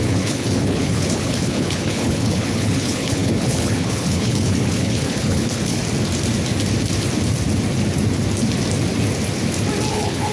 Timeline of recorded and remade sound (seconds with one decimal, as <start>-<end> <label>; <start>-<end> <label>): 0.0-5.8 remade; 5.8-9.9 recorded; 9.9-10.3 remade